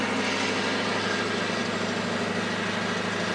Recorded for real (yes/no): yes